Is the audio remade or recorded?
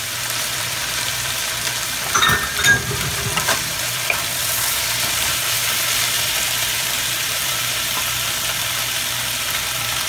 remade